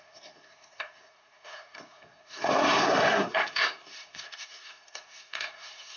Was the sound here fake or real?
fake